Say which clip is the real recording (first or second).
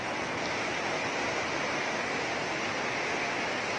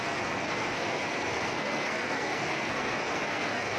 first